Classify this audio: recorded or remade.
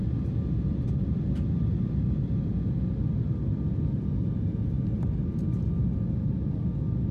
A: recorded